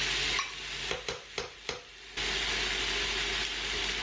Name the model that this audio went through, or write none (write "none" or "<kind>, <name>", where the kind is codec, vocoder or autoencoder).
none